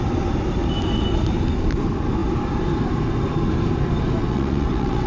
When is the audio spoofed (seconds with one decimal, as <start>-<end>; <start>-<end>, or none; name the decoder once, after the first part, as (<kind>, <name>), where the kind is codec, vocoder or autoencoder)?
4.2-5.1 (vocoder, WaveNeXt)